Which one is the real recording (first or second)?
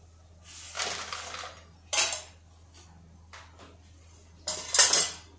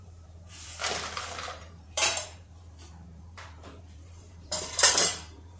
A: first